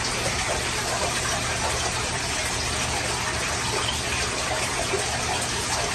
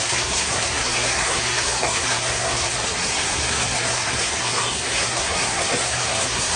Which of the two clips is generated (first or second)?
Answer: second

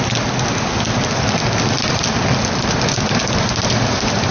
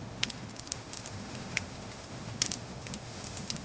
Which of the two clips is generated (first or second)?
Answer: second